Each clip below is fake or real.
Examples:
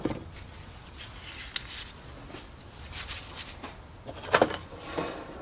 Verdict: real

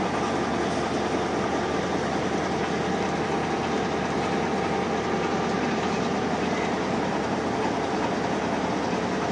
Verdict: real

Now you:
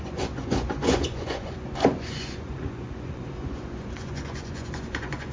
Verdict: fake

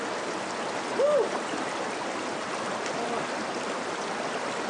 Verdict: real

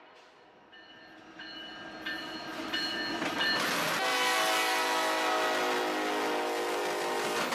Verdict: real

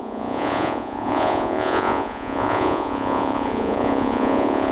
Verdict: fake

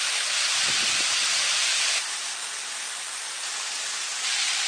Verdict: real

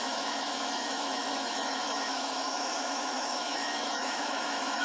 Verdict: fake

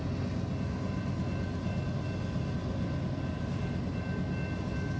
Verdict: real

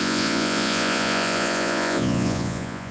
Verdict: fake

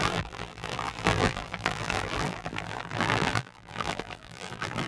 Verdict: fake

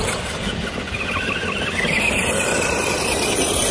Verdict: real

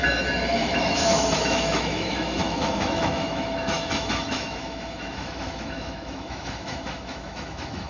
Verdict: fake